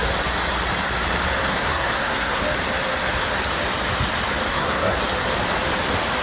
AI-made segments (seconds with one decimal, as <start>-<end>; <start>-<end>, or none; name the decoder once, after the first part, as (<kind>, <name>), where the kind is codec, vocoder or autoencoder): 1.5-2.4 (codec, SNAC); 4.5-5.0